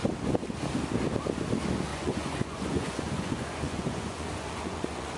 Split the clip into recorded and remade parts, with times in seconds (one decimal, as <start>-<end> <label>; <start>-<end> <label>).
0.0-1.9 recorded; 1.9-5.2 remade